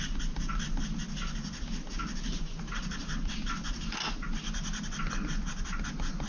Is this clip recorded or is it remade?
recorded